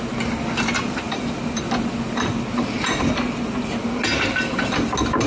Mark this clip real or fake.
real